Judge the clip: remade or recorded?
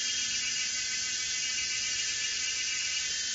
recorded